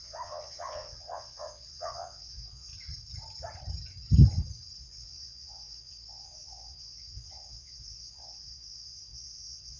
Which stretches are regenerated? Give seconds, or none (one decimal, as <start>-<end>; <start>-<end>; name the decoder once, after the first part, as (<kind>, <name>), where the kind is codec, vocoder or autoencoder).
0.0-2.7 (vocoder, Vocos); 4.8-9.8